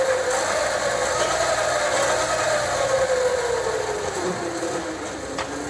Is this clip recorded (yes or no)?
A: yes